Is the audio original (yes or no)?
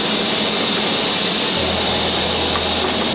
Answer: yes